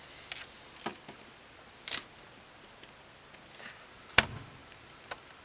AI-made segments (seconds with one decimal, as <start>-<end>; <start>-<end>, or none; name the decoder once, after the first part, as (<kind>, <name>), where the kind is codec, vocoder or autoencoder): none